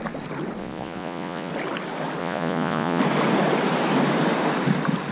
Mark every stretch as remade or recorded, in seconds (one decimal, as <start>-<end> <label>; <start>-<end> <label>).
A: 0.0-0.6 recorded; 0.6-1.5 remade; 1.5-2.2 recorded; 2.2-3.0 remade; 3.0-5.1 recorded